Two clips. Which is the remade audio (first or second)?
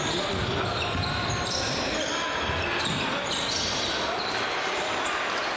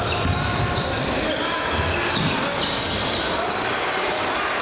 first